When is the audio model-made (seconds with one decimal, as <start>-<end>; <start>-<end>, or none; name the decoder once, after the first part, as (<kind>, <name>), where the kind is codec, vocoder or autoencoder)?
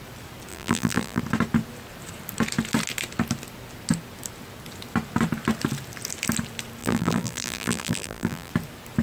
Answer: 0.5-1.2 (vocoder, BigVGAN v2); 6.8-8.5